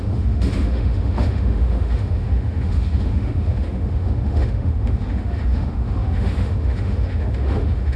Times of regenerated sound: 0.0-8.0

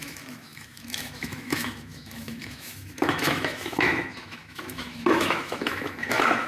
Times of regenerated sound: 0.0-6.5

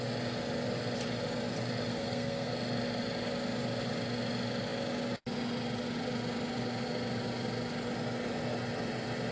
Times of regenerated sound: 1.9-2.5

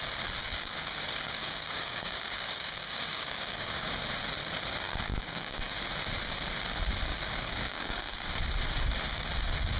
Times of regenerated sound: 0.4-3.9; 5.1-5.8; 7.1-8.3